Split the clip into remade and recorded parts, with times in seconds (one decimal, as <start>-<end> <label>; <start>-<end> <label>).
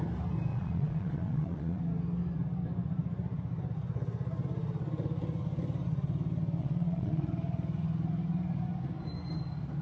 0.0-0.5 recorded; 0.5-1.8 remade; 1.8-6.6 recorded; 6.6-7.3 remade; 7.3-9.8 recorded